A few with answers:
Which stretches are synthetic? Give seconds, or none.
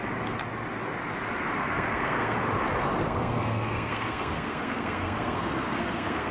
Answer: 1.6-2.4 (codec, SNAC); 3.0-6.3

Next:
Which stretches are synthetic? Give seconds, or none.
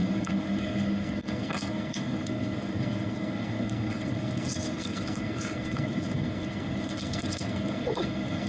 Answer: 0.0-8.5 (codec, SNAC)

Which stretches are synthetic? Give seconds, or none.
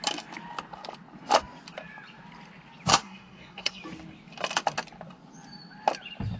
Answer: 2.9-3.8 (codec, SNAC)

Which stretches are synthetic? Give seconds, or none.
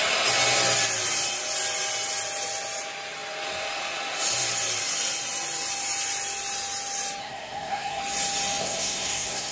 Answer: 7.2-8.0 (codec, SNAC); 8.6-9.5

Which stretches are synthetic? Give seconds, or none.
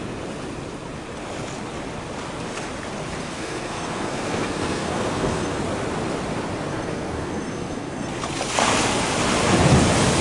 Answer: 3.2-5.6 (codec, SNAC); 6.7-8.2